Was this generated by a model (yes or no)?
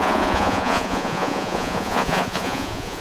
yes